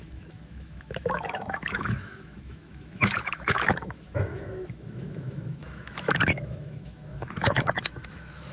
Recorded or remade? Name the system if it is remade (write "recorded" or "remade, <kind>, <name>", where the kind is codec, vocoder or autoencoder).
remade, autoencoder, DAC-VAE